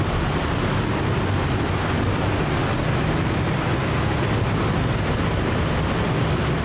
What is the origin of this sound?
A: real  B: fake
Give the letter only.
A